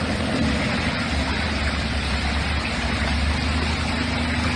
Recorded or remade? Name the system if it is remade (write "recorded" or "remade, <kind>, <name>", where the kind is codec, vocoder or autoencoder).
recorded